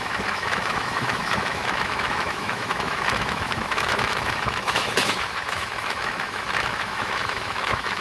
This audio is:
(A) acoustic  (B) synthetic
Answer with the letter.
B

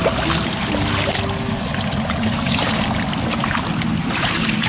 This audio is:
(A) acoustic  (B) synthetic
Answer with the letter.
A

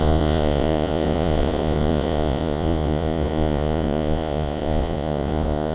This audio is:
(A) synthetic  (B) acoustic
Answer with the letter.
A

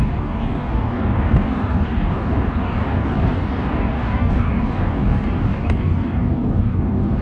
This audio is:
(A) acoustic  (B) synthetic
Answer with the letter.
B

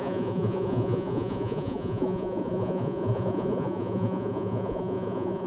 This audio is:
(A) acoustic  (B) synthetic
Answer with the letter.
B